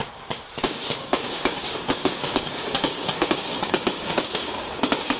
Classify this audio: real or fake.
fake